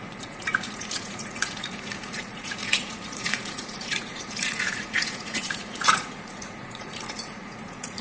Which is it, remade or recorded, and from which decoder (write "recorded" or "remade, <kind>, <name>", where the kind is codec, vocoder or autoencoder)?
remade, vocoder, Vocos